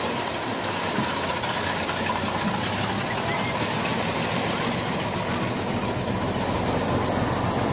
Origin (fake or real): real